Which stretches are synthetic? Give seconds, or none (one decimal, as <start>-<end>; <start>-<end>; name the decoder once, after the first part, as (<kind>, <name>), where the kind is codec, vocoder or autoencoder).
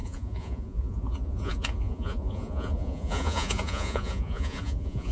0.0-5.1 (vocoder, Vocos)